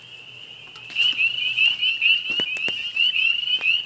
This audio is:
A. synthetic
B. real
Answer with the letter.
B